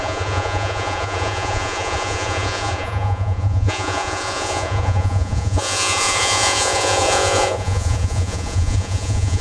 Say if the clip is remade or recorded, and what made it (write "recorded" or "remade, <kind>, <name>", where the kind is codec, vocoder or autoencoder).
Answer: remade, vocoder, Vocos